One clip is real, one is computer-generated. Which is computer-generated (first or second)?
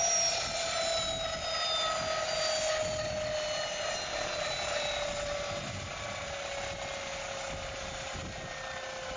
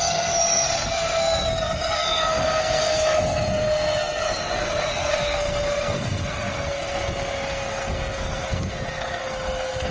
second